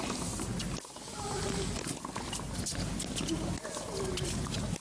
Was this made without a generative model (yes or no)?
yes